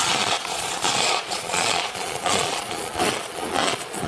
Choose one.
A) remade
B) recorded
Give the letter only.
A